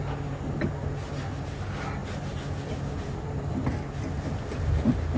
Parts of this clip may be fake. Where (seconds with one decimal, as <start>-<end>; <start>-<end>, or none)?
none